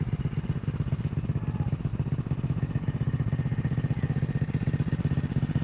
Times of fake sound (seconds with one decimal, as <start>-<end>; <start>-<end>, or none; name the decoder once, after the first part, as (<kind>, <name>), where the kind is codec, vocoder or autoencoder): none